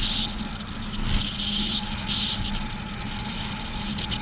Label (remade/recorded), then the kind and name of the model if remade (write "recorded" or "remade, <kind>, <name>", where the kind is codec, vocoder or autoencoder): recorded